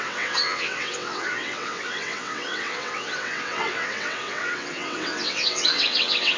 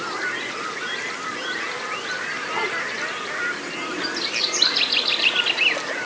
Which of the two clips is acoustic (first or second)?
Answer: second